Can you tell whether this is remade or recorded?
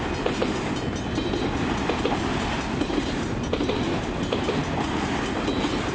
recorded